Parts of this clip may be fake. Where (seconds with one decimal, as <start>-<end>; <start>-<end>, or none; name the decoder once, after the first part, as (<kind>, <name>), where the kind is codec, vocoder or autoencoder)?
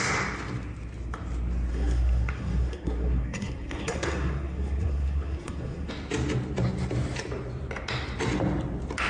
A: 1.7-5.9 (codec, SNAC)